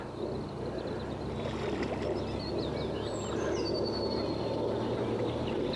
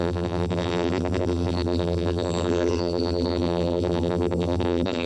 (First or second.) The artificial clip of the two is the second